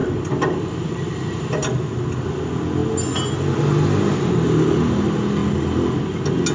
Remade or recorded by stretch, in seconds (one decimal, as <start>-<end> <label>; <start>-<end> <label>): 0.0-1.4 remade; 1.4-6.5 recorded